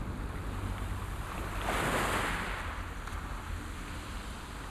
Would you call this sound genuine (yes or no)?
yes